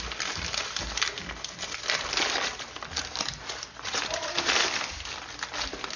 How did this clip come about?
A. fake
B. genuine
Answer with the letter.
B